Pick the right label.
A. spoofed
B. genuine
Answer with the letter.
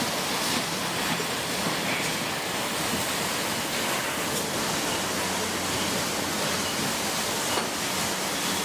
B